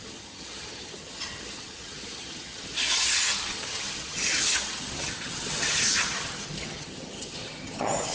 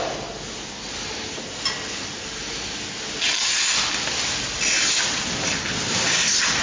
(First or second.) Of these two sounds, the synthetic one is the first